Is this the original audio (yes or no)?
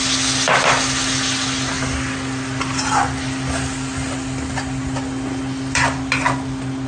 yes